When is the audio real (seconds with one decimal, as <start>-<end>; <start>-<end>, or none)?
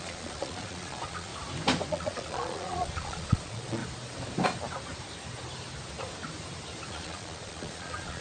1.3-1.9; 3.8-6.9